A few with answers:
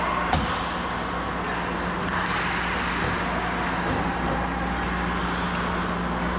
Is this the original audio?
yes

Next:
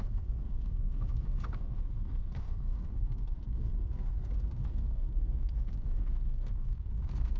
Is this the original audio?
no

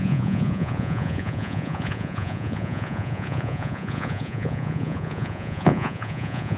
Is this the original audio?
no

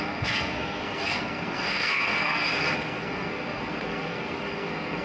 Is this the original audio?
no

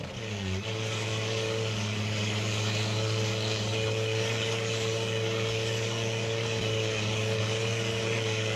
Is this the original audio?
no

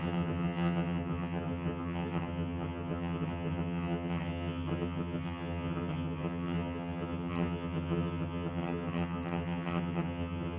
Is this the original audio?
no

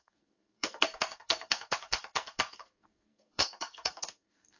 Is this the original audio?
no